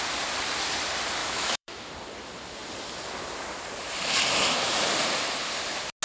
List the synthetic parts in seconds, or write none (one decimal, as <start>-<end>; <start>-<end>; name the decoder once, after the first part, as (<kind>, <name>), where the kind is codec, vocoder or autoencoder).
1.2-1.9 (autoencoder, DAC-VAE)